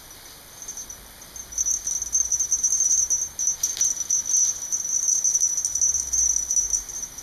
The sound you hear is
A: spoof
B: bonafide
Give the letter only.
B